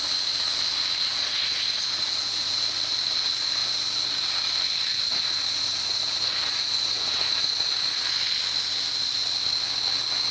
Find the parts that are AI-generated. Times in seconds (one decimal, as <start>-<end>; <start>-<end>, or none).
1.1-2.7; 4.9-8.0

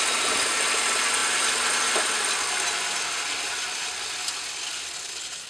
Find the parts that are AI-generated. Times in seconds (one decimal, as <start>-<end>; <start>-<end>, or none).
none

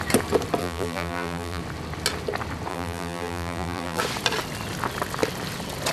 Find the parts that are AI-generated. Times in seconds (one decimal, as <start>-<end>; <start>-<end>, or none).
0.6-1.6; 2.7-4.0

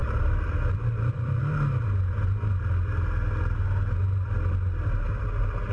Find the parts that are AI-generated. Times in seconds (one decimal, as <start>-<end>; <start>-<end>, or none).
0.0-1.4

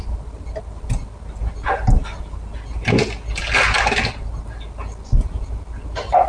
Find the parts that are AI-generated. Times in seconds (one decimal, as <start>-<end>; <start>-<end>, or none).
none

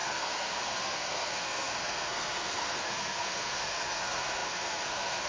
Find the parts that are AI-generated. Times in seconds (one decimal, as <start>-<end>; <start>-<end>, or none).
0.0-5.3

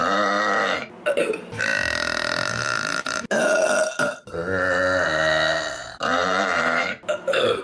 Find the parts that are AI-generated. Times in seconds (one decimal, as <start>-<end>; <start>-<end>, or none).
5.8-7.0